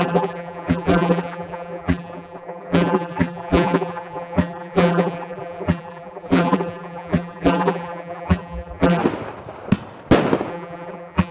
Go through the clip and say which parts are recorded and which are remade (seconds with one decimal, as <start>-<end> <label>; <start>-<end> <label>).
0.0-9.0 remade; 9.0-10.5 recorded; 10.5-11.3 remade